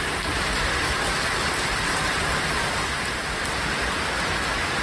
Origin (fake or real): real